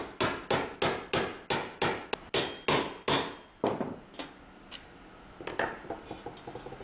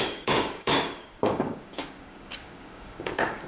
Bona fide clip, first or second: first